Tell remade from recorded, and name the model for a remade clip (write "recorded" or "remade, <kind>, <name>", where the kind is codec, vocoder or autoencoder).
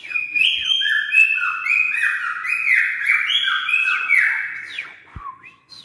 remade, vocoder, Vocos